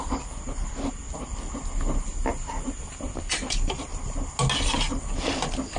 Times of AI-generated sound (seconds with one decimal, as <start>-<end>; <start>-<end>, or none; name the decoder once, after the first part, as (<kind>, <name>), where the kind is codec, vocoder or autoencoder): none